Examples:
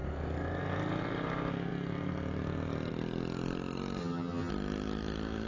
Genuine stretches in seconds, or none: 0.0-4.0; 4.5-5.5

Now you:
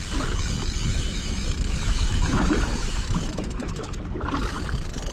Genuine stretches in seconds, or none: 0.0-0.9; 4.0-5.1

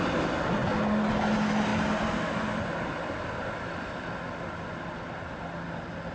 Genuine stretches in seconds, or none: 0.0-6.1

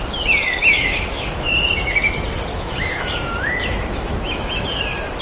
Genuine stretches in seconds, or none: 0.0-0.6; 1.5-2.5; 4.8-5.2

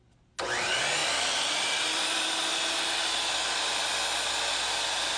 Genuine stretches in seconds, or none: 0.0-1.0; 3.0-5.2